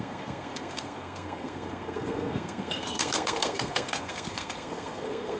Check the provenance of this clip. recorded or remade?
remade